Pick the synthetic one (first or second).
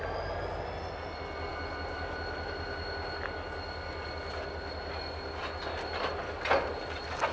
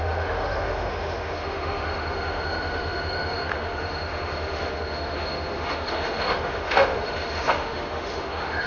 second